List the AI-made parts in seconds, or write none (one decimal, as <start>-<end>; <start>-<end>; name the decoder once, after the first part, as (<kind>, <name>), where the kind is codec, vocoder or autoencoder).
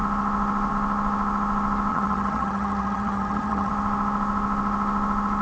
1.9-3.7 (vocoder, HiFi-GAN)